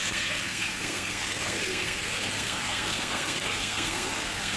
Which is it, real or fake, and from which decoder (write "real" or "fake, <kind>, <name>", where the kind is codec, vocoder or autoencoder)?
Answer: fake, codec, SNAC